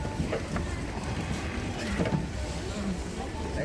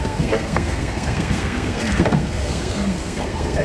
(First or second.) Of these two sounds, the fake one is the second